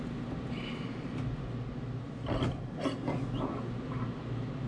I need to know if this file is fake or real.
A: real